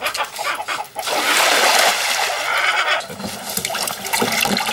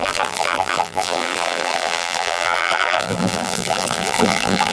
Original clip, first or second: first